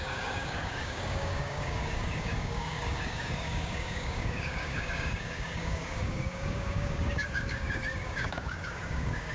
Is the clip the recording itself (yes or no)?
no